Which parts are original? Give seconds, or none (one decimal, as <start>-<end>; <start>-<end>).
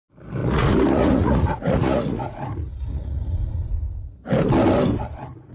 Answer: 0.0-0.4; 3.7-5.5